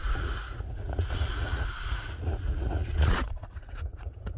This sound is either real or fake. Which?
fake